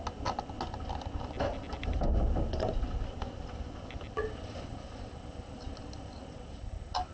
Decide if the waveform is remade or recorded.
recorded